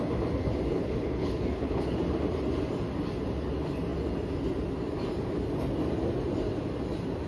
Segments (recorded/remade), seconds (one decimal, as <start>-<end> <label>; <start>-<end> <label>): 0.0-0.7 recorded; 0.7-2.0 remade; 2.0-7.3 recorded